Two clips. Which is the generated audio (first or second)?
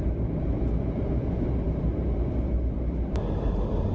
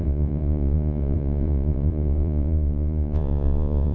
second